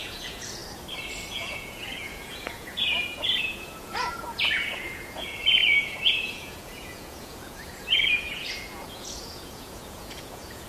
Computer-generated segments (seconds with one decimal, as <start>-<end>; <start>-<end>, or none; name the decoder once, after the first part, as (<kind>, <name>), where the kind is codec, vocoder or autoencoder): 0.0-0.6 (vocoder, Vocos); 1.3-10.7